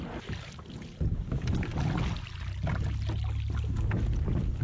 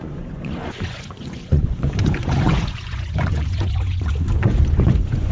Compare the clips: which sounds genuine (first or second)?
first